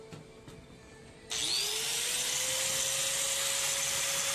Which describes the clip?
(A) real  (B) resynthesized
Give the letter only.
A